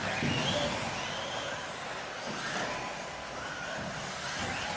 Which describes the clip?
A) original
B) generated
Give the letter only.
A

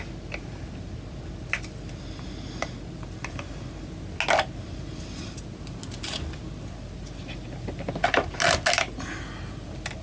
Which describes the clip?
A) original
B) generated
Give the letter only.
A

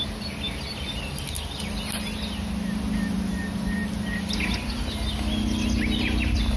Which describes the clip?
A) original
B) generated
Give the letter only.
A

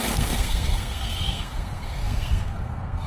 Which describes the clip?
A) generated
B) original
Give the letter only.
A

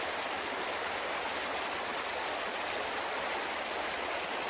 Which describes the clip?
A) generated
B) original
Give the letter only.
B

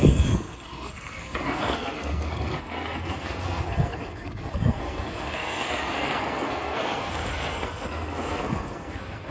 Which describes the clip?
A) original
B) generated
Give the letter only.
B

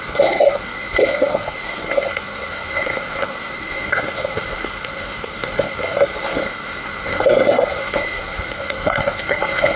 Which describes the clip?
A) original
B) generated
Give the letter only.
B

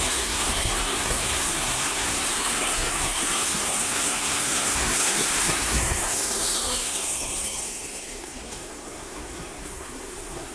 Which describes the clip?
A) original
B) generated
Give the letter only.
B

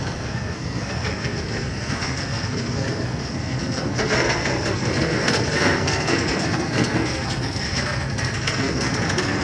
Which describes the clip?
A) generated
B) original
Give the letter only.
A